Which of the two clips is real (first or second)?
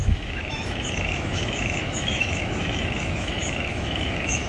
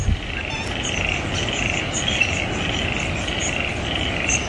second